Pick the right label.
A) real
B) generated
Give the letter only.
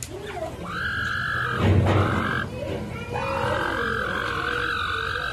A